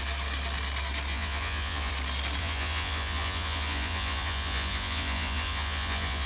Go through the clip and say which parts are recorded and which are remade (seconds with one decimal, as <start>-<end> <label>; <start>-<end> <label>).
0.0-1.1 recorded; 1.1-1.9 remade; 1.9-2.4 recorded; 2.4-6.3 remade